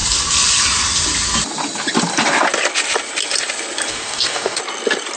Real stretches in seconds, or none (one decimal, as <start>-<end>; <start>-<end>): 0.0-3.9; 4.6-5.2